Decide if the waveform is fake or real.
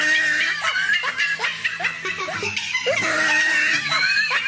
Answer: real